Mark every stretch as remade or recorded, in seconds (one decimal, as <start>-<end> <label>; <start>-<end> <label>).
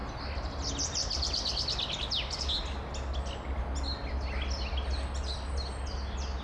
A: 0.0-6.4 recorded